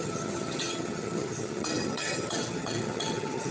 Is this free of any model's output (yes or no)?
no